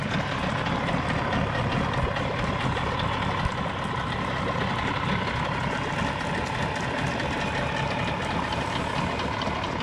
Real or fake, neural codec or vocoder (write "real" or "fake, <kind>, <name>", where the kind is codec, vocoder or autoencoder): real